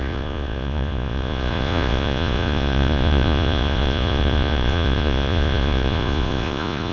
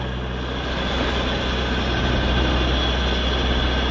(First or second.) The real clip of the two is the second